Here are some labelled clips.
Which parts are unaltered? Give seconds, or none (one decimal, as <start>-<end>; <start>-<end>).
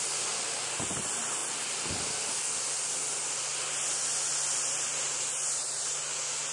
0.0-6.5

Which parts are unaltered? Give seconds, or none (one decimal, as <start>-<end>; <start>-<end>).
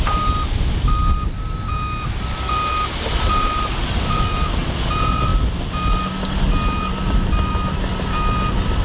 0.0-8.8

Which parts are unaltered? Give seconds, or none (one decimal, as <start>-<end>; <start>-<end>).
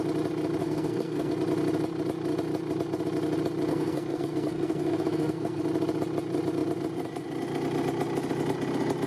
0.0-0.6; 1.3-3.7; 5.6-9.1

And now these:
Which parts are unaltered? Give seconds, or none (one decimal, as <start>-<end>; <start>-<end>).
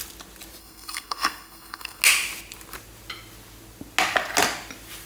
0.0-0.6; 2.0-5.1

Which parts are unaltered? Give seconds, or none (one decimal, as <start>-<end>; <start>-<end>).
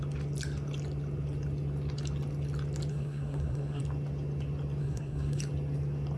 0.0-2.9; 3.8-4.8; 5.4-6.2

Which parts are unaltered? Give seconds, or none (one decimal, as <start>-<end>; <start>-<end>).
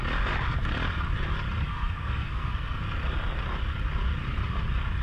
0.0-1.6; 2.8-5.0